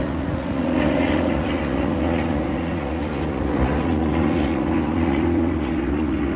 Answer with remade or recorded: remade